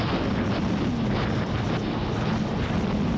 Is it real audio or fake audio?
real